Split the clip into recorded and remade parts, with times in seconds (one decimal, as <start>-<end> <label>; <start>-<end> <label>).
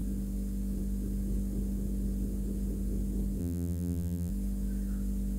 0.0-3.4 recorded; 3.4-4.3 remade; 4.3-5.4 recorded